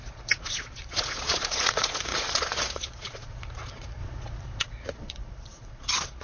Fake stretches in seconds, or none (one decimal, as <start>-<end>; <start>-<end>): 0.0-6.2